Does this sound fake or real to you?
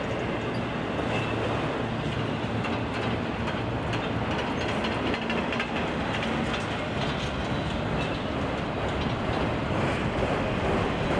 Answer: real